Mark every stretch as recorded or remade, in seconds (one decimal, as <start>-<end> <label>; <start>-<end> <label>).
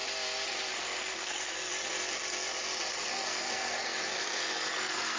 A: 0.0-0.7 recorded; 0.7-1.7 remade; 1.7-2.9 recorded; 2.9-5.2 remade